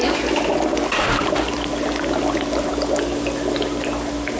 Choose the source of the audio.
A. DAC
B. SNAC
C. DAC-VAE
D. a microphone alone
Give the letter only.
D